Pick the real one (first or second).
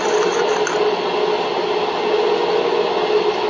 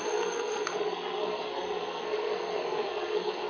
first